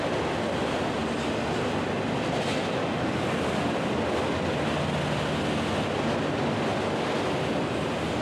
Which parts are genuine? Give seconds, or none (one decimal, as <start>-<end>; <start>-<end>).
0.0-8.2